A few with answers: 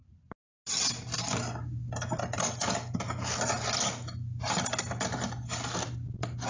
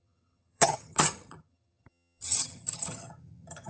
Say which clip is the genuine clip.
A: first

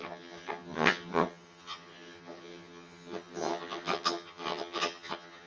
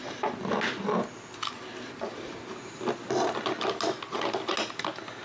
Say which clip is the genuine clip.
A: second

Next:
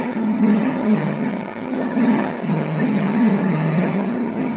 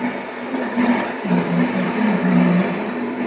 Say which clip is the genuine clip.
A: second